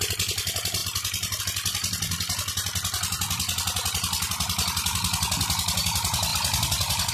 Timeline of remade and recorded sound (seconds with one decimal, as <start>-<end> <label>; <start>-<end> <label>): 0.0-7.1 recorded